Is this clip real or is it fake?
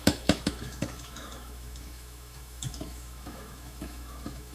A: fake